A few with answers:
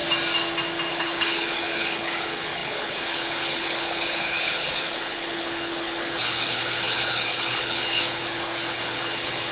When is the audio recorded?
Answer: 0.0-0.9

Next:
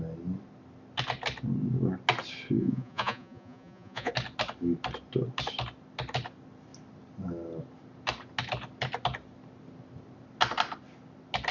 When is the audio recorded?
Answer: 0.0-2.6; 4.1-11.5

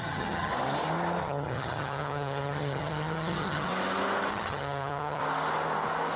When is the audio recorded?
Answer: 0.5-1.2; 3.7-4.3; 5.2-6.2

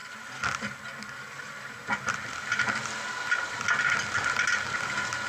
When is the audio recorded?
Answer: 0.0-5.3

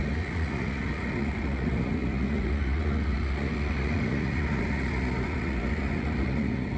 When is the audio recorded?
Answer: none

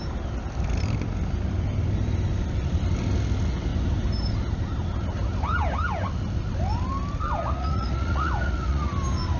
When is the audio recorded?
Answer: 0.0-7.4; 8.9-9.4